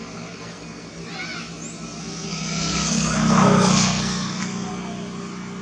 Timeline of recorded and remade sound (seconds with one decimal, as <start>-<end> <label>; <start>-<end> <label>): 0.0-1.0 remade; 1.0-2.0 recorded; 2.0-4.7 remade; 4.7-5.6 recorded

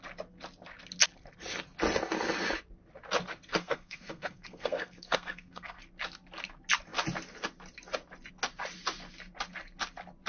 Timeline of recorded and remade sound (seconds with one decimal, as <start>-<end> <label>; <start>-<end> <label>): 0.0-3.6 recorded; 3.6-5.8 remade; 5.8-10.3 recorded

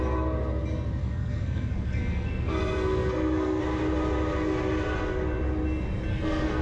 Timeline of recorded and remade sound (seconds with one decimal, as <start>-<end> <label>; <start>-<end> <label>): 0.0-1.0 recorded; 1.0-3.6 remade; 3.6-6.1 recorded; 6.1-6.6 remade

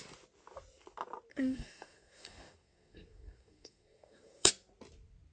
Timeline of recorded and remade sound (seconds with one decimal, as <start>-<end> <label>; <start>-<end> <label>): 0.0-1.3 recorded; 1.3-4.5 remade; 4.5-5.3 recorded

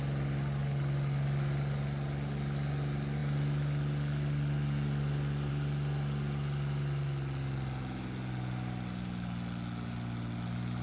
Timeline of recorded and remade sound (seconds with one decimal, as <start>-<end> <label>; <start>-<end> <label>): 0.0-10.8 recorded